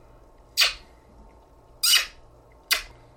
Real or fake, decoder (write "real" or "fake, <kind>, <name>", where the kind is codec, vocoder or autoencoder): real